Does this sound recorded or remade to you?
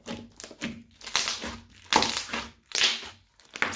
recorded